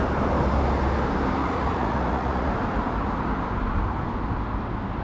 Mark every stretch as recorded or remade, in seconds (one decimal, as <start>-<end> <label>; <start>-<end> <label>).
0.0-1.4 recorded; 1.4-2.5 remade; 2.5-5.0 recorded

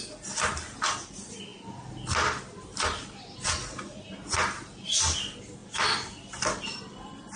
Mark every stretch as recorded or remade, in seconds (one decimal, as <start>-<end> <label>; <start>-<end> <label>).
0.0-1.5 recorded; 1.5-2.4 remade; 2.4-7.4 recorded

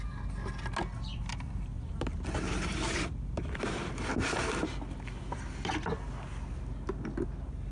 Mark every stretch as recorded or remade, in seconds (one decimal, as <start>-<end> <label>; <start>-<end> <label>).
0.0-1.1 recorded; 1.1-3.7 remade; 3.7-7.7 recorded